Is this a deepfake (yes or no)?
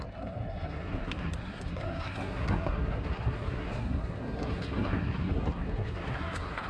yes